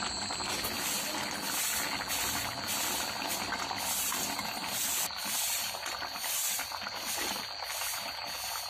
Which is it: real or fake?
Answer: real